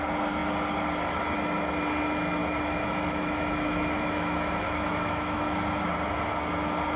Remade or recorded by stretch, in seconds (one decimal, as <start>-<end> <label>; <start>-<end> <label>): 0.0-2.4 recorded; 2.4-5.9 remade; 5.9-7.0 recorded